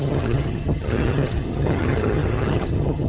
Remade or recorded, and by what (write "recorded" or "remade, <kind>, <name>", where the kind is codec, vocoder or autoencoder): remade, vocoder, HiFi-GAN